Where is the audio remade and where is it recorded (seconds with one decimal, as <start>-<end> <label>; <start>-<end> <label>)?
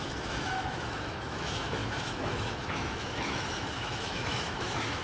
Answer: 0.0-5.0 remade